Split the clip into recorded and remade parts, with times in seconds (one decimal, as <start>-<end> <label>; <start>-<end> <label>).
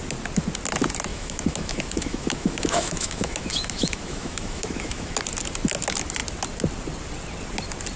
0.0-1.1 recorded; 1.1-5.2 remade; 5.2-8.0 recorded